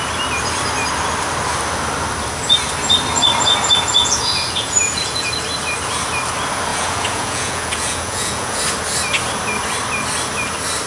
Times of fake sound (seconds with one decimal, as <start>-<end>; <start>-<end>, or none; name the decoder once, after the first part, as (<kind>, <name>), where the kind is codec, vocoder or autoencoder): 4.0-5.3 (vocoder, Vocos); 6.7-8.6